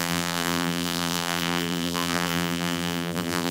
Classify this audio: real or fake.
fake